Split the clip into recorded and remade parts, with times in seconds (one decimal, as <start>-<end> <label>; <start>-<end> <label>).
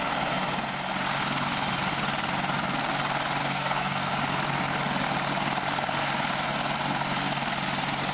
0.0-3.4 recorded; 3.4-4.1 remade; 4.1-8.1 recorded